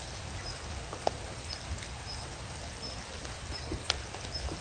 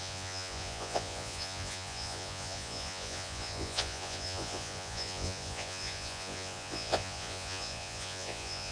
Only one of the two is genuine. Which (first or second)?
first